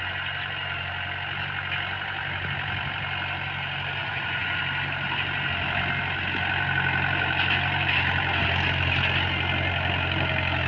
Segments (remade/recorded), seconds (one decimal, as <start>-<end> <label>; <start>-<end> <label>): 0.0-4.0 recorded; 4.0-4.6 remade; 4.6-10.7 recorded